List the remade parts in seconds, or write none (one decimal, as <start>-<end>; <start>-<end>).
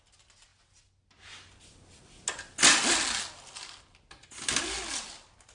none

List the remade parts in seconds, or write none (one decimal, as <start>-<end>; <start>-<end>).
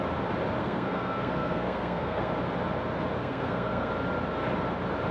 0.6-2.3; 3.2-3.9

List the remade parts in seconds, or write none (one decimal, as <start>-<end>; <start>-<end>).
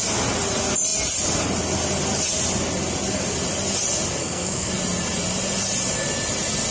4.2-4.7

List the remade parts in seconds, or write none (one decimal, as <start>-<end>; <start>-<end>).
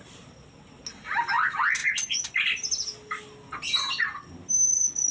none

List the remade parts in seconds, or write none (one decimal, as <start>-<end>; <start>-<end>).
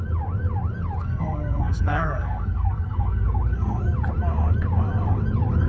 1.0-3.8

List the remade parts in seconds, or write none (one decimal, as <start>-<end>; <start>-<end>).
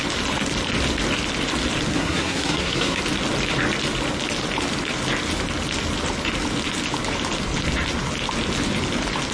1.9-3.0